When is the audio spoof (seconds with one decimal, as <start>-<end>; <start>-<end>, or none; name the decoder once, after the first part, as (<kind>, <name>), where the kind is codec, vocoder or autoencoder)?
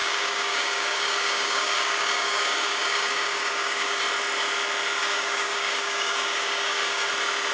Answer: 0.0-4.0 (codec, DAC); 5.0-7.1